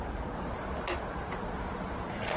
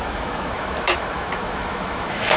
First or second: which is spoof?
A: second